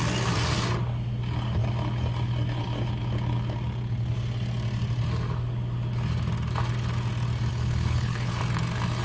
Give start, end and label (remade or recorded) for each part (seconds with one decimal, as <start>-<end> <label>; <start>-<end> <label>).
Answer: 0.0-7.5 recorded; 7.5-8.4 remade; 8.4-9.0 recorded